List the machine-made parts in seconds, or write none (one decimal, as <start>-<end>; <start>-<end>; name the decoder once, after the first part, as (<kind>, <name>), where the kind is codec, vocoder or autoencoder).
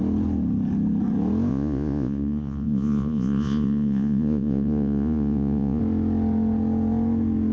1.5-5.8 (vocoder, Vocos)